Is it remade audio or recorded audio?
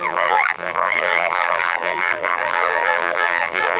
remade